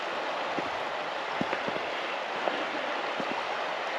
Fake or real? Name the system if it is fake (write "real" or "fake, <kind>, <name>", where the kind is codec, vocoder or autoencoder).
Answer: real